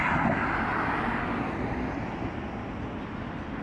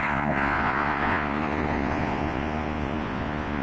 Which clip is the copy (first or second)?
second